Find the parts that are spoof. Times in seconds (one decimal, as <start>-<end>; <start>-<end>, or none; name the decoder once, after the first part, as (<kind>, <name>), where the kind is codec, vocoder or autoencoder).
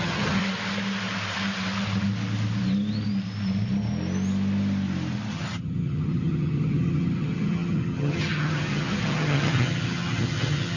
0.0-0.4 (vocoder, HiFi-GAN); 5.3-10.8